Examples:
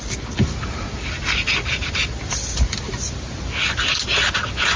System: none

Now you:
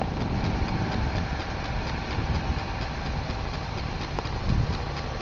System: none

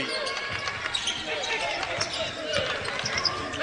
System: none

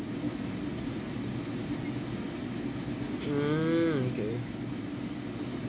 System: none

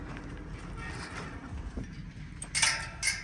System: none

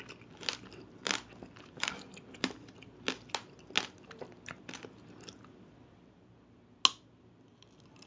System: none